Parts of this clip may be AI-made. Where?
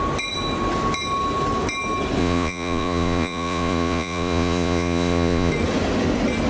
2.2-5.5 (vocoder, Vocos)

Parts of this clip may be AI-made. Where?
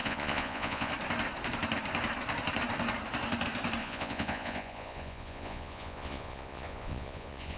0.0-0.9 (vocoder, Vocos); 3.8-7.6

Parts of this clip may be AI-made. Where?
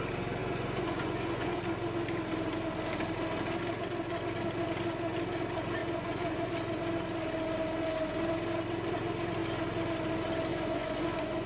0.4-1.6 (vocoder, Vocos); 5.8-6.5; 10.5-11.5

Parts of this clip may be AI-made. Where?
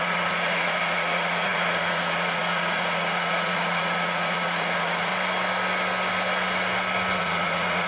0.0-5.1 (vocoder, Vocos); 7.2-7.9